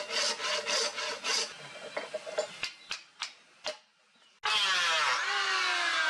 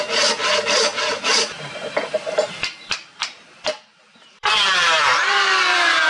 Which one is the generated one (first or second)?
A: second